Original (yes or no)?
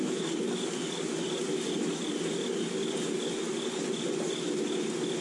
yes